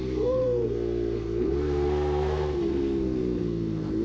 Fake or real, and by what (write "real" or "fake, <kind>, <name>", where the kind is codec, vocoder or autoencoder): fake, codec, SNAC